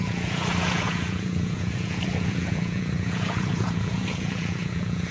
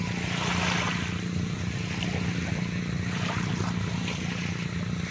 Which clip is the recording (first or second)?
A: second